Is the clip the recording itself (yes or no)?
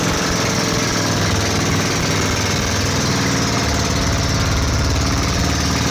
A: yes